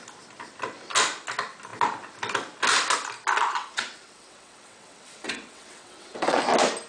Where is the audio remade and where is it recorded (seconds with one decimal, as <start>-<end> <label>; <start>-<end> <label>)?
0.0-3.6 recorded; 3.6-6.4 remade; 6.4-6.9 recorded